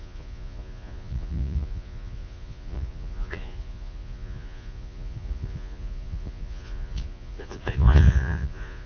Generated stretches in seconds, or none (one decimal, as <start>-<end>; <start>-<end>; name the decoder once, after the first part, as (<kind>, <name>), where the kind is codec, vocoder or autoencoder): 0.0-8.9 (vocoder, Vocos)